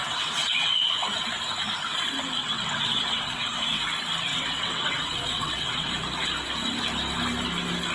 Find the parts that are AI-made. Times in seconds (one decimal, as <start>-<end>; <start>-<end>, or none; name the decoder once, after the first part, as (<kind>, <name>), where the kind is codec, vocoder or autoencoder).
0.0-0.8 (vocoder, WaveNeXt); 2.4-3.8; 4.3-5.9